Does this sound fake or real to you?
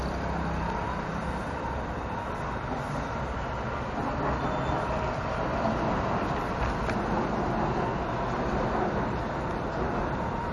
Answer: real